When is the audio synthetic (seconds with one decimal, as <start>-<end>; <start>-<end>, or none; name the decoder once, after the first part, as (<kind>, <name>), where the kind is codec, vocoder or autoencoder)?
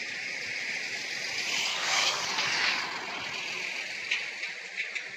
1.7-2.8 (codec, DAC)